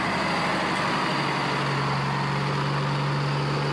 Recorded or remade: recorded